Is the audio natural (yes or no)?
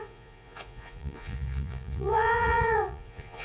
no